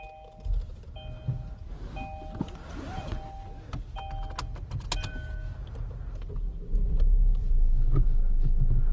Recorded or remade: recorded